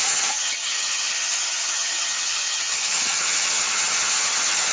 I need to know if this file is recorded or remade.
remade